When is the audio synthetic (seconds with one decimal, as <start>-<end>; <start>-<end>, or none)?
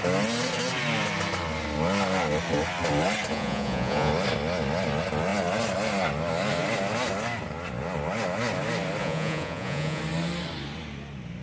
3.3-4.1; 9.0-10.0